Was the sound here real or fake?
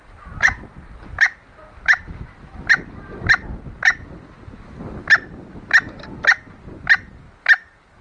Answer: real